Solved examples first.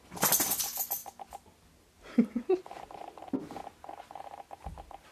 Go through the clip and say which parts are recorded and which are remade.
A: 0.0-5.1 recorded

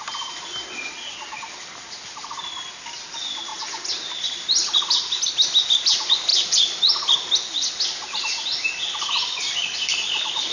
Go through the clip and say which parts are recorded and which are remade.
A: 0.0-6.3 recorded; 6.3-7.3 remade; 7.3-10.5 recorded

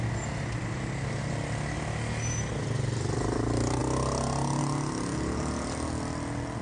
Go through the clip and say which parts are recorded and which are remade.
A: 0.0-6.6 recorded

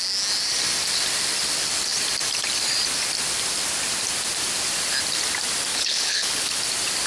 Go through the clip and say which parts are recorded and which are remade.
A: 0.0-5.7 recorded; 5.7-6.6 remade; 6.6-7.1 recorded